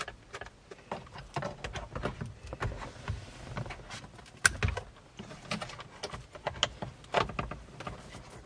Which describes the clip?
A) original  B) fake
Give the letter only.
A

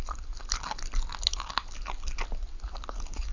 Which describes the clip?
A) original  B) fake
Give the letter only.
A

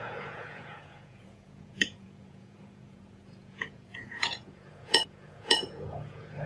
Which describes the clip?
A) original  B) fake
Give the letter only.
B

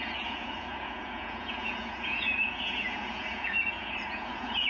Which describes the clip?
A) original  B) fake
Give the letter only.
B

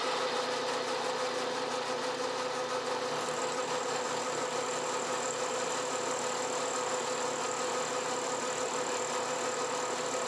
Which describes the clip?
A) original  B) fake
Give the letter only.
A